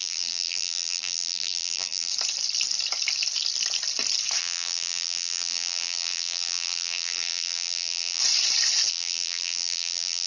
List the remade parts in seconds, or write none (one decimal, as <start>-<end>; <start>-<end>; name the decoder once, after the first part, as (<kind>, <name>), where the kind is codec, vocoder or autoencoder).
0.0-2.1 (vocoder, BigVGAN v2); 4.4-8.2; 8.9-10.3